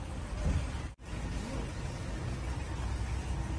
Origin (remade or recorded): recorded